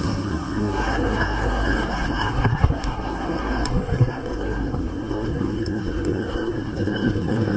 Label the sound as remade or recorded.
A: remade